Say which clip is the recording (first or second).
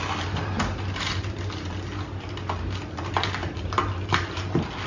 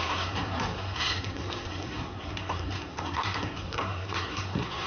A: first